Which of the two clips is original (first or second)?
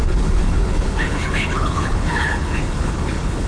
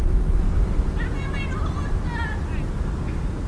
second